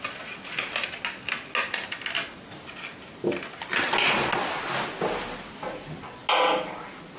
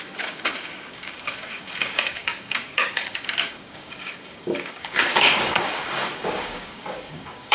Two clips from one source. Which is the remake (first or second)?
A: second